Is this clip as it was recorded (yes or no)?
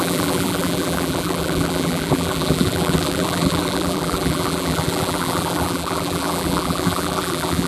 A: no